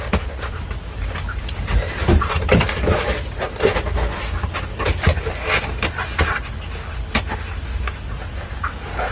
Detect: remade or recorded recorded